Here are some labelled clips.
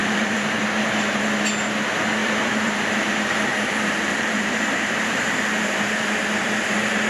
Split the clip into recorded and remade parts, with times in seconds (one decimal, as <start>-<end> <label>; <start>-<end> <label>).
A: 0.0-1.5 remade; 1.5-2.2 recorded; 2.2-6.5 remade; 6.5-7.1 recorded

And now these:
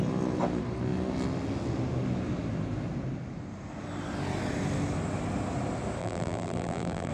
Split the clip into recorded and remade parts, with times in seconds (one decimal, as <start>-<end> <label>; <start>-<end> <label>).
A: 0.0-6.0 recorded; 6.0-7.1 remade

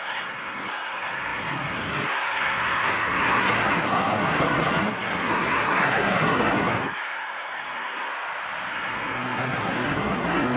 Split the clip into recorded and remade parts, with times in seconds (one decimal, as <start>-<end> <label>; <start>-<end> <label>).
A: 0.0-8.1 remade; 8.1-8.7 recorded; 8.7-10.6 remade

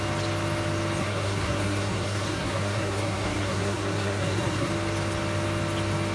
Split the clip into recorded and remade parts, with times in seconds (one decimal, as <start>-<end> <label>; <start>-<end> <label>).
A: 0.0-1.0 recorded; 1.0-4.7 remade; 4.7-6.1 recorded

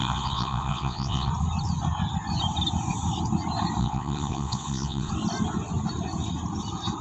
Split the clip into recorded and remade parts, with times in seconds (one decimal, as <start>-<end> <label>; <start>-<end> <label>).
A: 0.0-1.3 remade; 1.3-3.8 recorded; 3.8-5.1 remade; 5.1-7.0 recorded